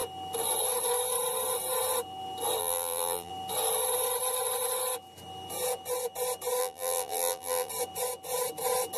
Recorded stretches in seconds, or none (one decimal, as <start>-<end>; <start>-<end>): 0.0-2.6; 3.3-6.6; 7.7-9.0